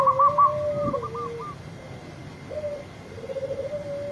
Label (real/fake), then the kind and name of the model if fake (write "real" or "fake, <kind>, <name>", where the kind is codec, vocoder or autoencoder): real